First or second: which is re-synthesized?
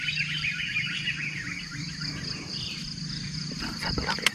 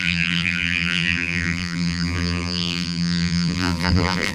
second